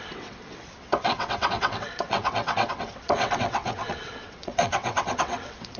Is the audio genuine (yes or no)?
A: no